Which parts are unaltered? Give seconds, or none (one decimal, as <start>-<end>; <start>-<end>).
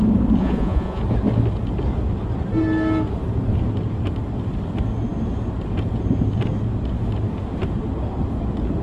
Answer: 0.0-0.4; 1.0-8.8